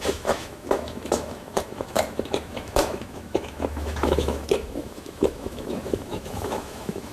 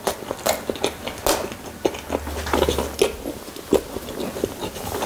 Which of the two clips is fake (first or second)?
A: first